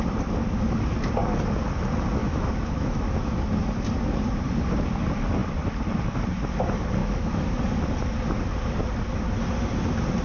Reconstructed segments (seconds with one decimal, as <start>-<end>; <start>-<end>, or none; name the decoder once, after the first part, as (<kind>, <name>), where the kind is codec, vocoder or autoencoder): 2.2-3.4 (autoencoder, DAC-VAE); 7.0-7.5